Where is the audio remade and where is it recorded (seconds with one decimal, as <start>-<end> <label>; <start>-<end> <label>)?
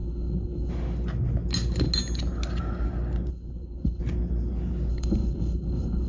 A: 0.0-0.7 remade; 0.7-3.3 recorded; 3.3-4.0 remade; 4.0-4.9 recorded; 4.9-6.1 remade